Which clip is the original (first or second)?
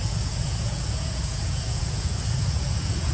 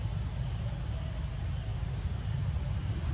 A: second